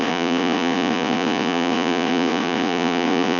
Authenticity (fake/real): fake